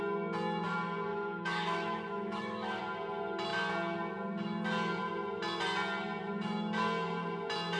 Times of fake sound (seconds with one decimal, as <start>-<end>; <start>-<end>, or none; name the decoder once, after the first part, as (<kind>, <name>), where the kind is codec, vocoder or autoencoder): 1.1-2.8 (autoencoder, DAC-VAE)